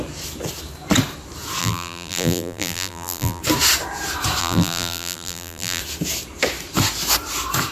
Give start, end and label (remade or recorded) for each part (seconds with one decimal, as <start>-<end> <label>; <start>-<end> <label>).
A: 0.0-1.6 recorded; 1.6-3.4 remade; 3.4-4.4 recorded; 4.4-5.8 remade; 5.8-7.7 recorded